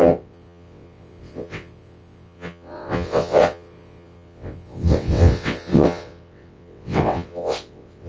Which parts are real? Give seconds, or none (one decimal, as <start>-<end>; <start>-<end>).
none